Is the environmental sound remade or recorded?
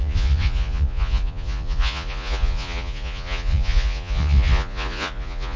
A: remade